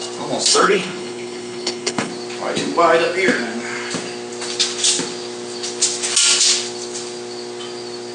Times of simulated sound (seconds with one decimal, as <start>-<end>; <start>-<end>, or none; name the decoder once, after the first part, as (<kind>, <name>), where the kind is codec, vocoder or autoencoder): 0.5-2.1 (codec, HILCodec)